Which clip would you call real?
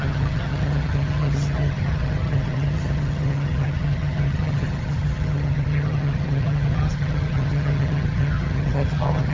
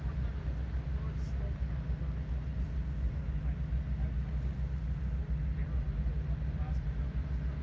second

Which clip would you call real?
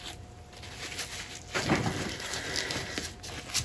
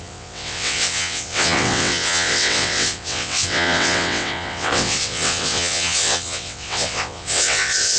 first